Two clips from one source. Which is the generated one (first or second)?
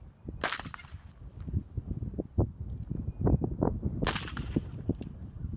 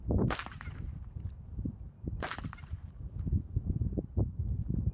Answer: second